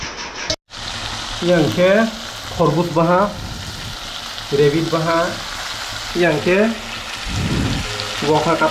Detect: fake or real real